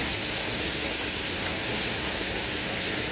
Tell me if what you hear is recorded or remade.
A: remade